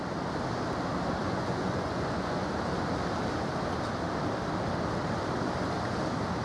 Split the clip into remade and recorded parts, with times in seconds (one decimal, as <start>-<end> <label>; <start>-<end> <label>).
0.0-1.2 recorded; 1.2-2.5 remade; 2.5-6.4 recorded